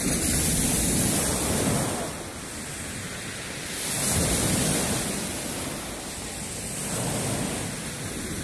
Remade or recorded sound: recorded